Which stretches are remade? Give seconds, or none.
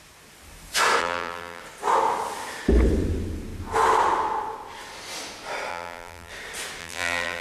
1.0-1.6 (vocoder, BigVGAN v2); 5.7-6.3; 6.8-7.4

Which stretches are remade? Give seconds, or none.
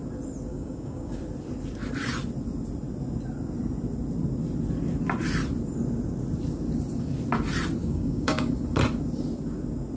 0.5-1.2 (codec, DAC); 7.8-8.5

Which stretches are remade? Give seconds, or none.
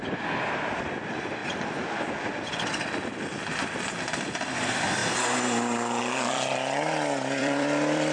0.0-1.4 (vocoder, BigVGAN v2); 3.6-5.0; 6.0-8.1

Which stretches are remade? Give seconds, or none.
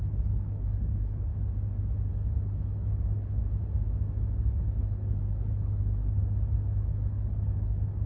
0.0-1.3 (codec, HILCodec); 2.1-3.4; 4.4-6.2; 7.1-8.1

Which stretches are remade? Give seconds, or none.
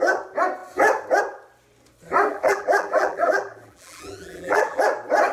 2.3-4.8 (vocoder, BigVGAN v2)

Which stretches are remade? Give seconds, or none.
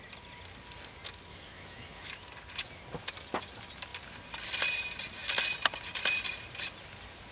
1.3-2.1 (autoencoder, DAC-VAE)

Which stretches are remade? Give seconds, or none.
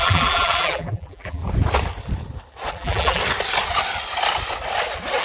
0.0-1.4 (vocoder, BigVGAN v2); 2.7-3.2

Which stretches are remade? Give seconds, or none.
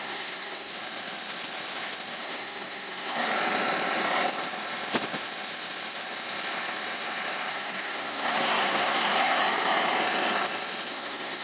0.0-0.7 (codec, SNAC); 2.2-3.3; 7.5-9.4; 10.9-11.4